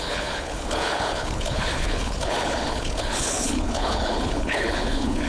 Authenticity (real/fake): fake